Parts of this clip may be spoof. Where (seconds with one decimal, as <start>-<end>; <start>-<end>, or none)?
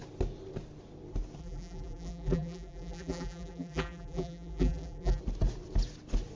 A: 1.4-5.2